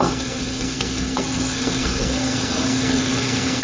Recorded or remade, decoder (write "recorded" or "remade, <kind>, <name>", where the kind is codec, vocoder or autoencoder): remade, codec, SNAC